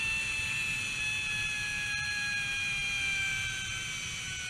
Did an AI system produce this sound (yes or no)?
no